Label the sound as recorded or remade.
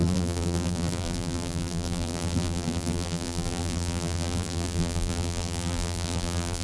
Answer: remade